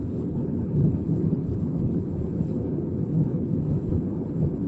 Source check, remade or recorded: remade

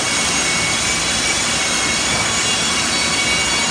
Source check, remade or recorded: recorded